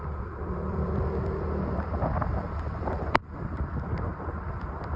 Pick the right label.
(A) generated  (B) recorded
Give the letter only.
A